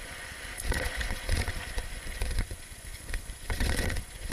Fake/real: fake